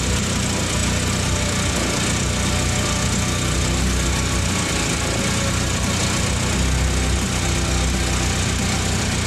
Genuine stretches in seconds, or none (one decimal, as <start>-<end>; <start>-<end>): 0.0-9.3